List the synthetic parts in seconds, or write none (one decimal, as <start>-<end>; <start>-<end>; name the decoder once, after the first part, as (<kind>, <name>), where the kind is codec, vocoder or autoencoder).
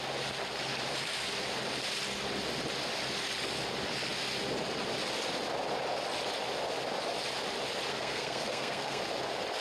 7.9-9.0 (codec, SNAC)